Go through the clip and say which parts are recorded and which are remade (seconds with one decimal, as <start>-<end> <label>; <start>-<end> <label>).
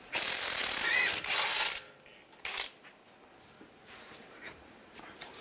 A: 0.0-0.6 remade; 0.6-3.8 recorded; 3.8-5.4 remade